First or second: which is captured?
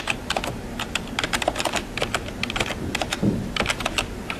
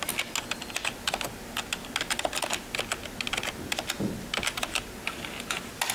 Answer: second